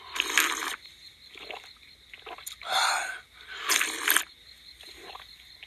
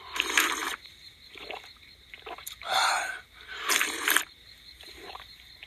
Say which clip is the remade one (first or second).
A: second